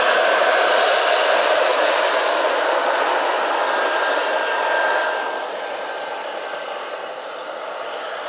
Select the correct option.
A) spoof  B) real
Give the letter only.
B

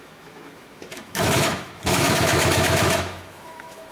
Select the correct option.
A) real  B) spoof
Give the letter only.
B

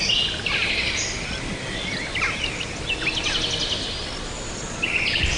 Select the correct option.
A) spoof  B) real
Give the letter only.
B